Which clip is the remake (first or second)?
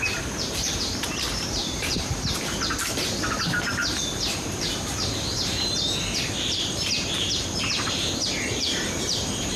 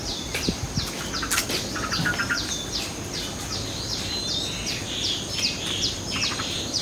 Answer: first